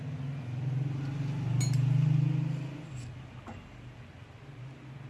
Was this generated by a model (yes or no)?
no